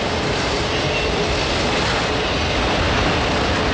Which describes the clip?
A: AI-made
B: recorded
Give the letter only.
B